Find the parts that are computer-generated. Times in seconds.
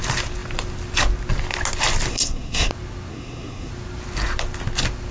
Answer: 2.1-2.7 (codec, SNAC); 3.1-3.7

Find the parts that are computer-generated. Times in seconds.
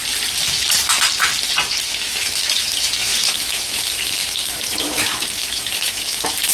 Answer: 1.9-6.5 (autoencoder, DAC-VAE)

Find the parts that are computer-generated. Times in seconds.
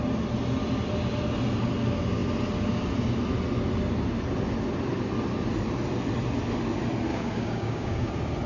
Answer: 7.1-8.1 (codec, DAC)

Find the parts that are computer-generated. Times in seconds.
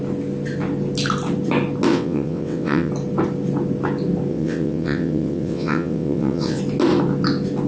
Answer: 1.9-2.9 (vocoder, WaveNeXt); 4.3-6.6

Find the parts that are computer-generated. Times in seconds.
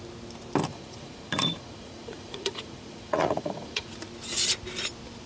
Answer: 0.7-3.9 (vocoder, Vocos)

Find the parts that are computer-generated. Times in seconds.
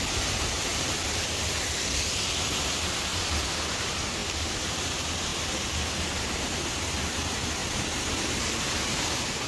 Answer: 0.0-3.1 (vocoder, BigVGAN v2); 3.7-9.5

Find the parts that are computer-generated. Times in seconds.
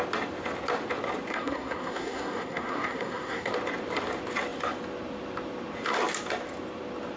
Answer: 1.3-3.5 (codec, SNAC)